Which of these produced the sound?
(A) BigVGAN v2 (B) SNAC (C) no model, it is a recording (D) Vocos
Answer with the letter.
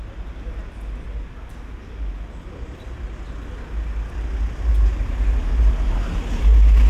C